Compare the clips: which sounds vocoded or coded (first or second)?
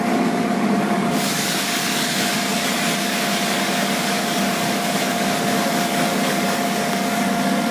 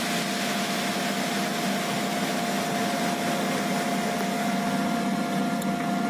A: first